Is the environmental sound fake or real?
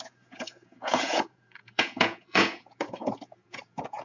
fake